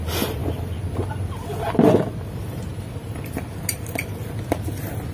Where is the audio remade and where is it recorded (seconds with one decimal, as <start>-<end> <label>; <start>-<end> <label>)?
0.0-5.1 recorded